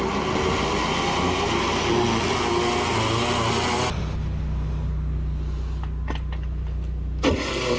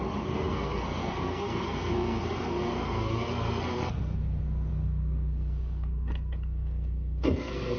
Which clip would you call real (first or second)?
first